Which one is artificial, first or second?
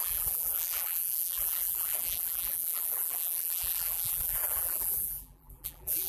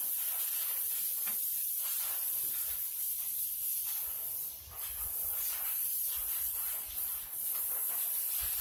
first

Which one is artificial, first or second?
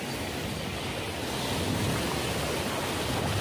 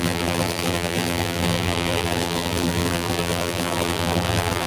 second